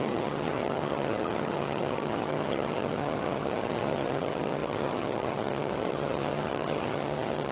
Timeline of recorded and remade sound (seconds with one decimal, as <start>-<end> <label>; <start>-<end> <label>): 0.0-7.5 remade